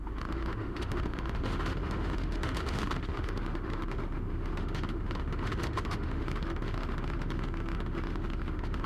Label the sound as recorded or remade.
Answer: remade